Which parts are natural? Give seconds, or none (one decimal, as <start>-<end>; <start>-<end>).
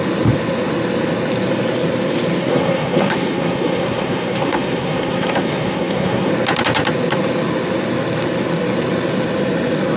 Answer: 0.0-2.4; 6.3-10.0